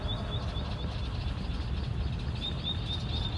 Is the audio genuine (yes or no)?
yes